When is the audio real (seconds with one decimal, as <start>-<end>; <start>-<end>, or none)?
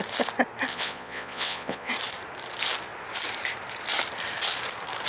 0.0-0.7; 1.9-5.1